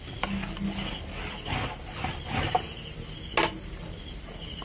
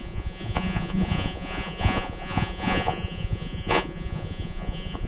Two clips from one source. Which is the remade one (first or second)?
second